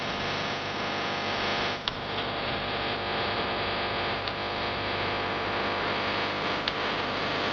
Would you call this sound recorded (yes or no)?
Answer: yes